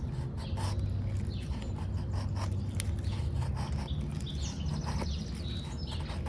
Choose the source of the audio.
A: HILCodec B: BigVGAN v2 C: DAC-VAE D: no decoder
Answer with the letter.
D